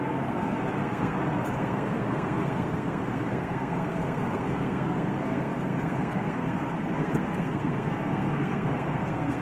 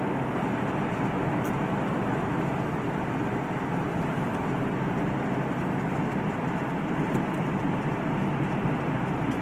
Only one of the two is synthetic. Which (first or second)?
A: first